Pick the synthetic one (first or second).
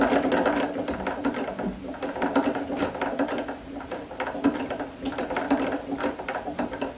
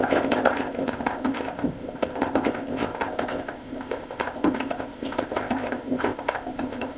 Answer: second